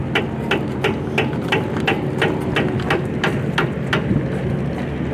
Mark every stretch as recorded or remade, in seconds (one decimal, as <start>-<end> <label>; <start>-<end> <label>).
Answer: 0.0-5.1 recorded